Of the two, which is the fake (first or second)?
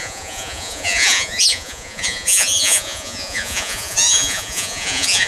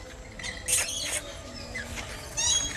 first